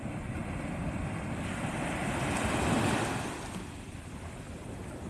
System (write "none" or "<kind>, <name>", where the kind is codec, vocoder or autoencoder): none